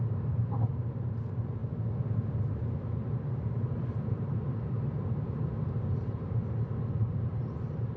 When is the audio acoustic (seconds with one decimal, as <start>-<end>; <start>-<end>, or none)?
1.6-2.4; 6.4-7.1